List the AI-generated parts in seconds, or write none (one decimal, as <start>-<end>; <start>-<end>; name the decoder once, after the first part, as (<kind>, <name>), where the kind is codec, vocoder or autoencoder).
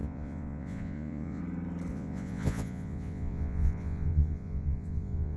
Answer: 0.0-1.4 (vocoder, Vocos); 1.9-5.4